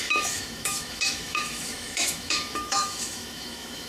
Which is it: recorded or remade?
remade